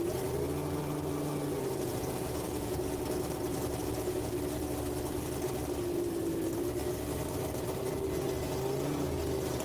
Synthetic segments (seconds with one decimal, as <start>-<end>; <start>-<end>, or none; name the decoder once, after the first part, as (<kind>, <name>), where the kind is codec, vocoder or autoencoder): 1.5-3.0 (vocoder, Vocos); 3.8-4.3